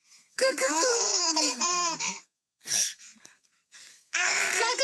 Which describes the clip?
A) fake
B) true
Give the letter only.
A